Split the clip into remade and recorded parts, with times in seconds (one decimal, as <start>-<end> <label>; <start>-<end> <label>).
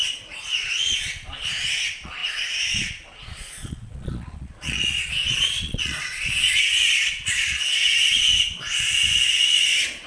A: 0.0-10.1 remade